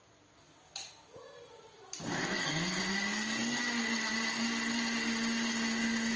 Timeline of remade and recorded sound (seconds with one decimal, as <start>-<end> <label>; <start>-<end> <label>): 0.0-2.3 recorded; 2.3-2.8 remade; 2.8-6.2 recorded

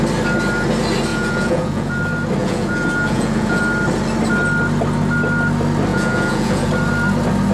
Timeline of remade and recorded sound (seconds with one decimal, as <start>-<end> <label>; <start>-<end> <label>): 0.0-1.1 recorded; 1.1-2.0 remade; 2.0-2.4 recorded; 2.4-3.6 remade; 3.6-5.9 recorded; 5.9-6.7 remade; 6.7-7.5 recorded